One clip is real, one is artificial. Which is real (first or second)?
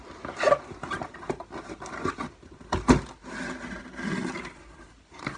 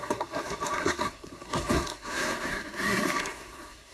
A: first